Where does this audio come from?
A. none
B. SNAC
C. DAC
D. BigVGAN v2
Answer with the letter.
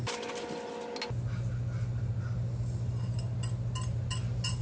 A